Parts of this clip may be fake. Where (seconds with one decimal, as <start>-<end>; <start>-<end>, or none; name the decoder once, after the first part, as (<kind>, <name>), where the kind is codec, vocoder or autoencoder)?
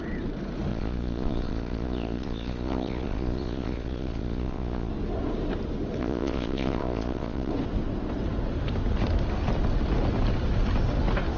0.7-4.9 (vocoder, Vocos); 6.0-7.5